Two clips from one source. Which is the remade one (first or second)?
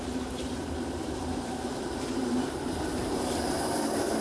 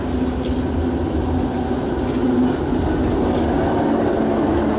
first